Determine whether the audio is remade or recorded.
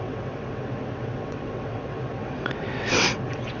remade